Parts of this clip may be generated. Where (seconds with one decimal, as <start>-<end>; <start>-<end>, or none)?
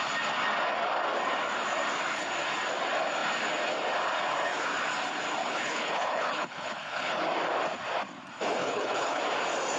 5.4-7.2; 8.6-9.2